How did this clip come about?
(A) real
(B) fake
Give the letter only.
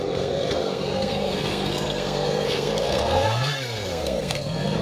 B